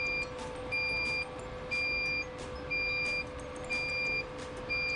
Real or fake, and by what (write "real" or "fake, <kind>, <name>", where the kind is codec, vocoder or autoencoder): real